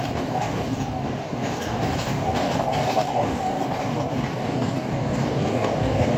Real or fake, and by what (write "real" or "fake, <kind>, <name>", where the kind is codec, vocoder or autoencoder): fake, codec, DAC